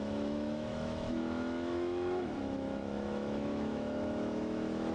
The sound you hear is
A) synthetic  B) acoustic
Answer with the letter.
A